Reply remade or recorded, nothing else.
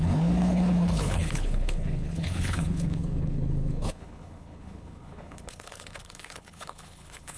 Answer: remade